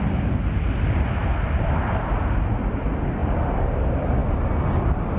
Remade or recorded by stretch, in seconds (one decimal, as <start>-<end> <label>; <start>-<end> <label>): 0.0-5.2 recorded